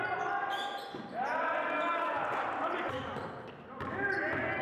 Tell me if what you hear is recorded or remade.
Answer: recorded